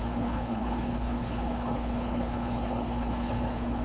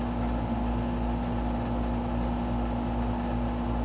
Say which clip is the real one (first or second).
second